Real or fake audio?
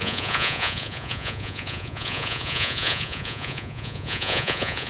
fake